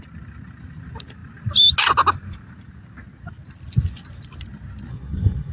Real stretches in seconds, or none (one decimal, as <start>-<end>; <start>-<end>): 0.0-4.9